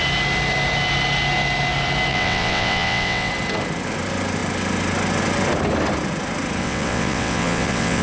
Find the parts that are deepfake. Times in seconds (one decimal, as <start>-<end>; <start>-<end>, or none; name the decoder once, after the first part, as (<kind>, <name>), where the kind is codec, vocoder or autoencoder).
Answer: 2.1-3.3 (vocoder, WaveNeXt); 6.6-8.0